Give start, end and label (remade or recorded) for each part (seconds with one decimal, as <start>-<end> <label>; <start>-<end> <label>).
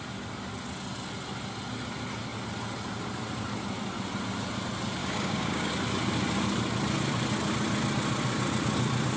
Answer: 0.0-5.0 recorded; 5.0-5.7 remade; 5.7-9.2 recorded